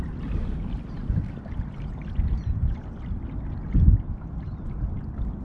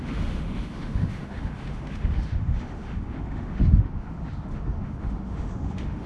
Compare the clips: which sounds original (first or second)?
first